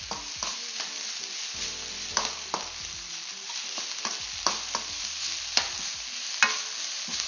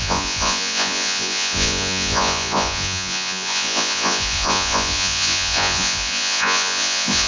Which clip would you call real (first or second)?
first